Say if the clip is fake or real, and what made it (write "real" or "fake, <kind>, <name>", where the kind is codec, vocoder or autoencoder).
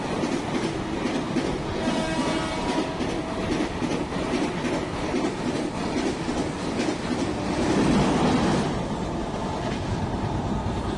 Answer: real